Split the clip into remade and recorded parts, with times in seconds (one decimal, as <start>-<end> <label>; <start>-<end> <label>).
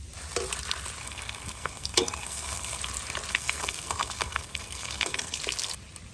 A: 0.0-1.0 recorded; 1.0-2.8 remade; 2.8-3.3 recorded; 3.3-5.4 remade; 5.4-6.1 recorded